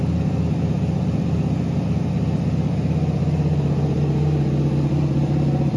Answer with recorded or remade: recorded